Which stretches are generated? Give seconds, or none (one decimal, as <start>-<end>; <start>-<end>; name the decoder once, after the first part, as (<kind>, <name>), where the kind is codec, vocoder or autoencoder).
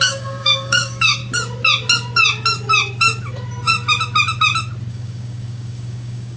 0.0-1.2 (codec, DAC); 4.9-6.4